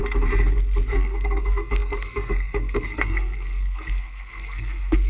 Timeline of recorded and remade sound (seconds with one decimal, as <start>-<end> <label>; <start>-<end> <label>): 0.0-0.9 recorded; 0.9-5.1 remade